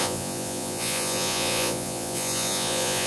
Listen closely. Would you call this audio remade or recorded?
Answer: remade